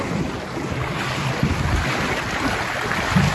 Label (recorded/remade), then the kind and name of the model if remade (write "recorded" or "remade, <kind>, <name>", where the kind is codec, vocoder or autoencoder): recorded